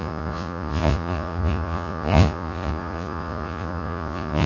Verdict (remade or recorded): remade